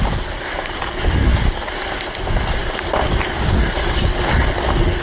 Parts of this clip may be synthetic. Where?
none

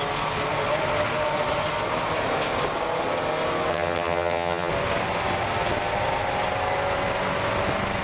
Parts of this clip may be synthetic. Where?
3.7-4.7 (vocoder, HiFi-GAN)

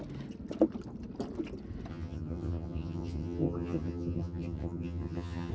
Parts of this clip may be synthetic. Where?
1.9-5.5 (vocoder, HiFi-GAN)

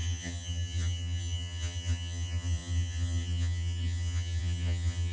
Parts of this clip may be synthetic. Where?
0.0-5.1 (vocoder, HiFi-GAN)